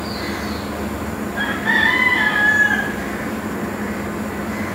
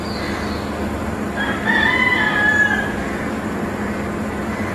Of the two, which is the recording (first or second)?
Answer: first